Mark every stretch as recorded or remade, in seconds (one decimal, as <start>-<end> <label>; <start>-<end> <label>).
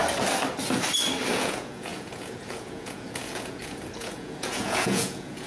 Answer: 0.0-1.3 recorded; 1.3-5.5 remade